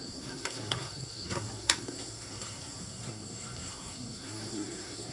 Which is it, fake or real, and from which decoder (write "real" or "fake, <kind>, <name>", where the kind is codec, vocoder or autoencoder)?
fake, codec, SNAC